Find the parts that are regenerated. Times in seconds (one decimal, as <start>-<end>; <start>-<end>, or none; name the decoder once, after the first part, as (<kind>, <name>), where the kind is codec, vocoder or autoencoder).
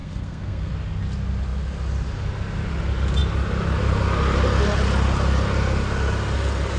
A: 0.0-0.7 (codec, SNAC)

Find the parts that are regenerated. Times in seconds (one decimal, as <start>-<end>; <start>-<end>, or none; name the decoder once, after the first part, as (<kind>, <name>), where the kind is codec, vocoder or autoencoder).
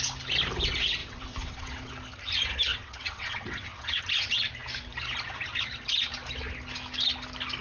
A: 1.0-1.9 (vocoder, WaveNeXt); 2.7-4.0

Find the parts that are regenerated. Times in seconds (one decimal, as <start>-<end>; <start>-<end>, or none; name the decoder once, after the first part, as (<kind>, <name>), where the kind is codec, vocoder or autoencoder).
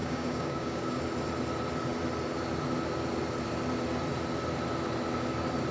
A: 0.0-1.0 (codec, DAC)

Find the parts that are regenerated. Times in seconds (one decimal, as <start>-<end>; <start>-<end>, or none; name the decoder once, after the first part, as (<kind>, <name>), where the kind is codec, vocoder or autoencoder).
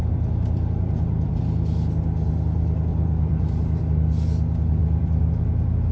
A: 0.0-1.4 (vocoder, BigVGAN v2); 2.9-3.8; 4.8-5.3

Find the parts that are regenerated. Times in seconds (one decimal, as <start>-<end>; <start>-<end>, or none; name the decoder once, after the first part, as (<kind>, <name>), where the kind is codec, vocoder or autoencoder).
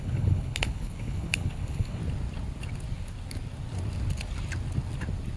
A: 0.0-2.0 (codec, HILCodec)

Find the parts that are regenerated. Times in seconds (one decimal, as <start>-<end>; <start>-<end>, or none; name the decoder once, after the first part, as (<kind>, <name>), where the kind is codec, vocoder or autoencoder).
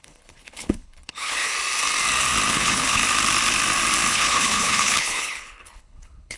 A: 0.0-1.5 (codec, HILCodec); 2.5-3.0; 4.1-6.4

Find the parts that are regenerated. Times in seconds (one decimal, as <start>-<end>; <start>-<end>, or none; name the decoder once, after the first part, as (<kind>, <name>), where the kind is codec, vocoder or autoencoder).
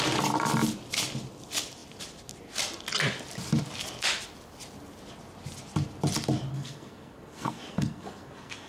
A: 6.5-8.7 (codec, SNAC)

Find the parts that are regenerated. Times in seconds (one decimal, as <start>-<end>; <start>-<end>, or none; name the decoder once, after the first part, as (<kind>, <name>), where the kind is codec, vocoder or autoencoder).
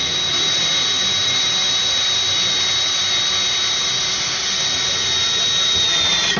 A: none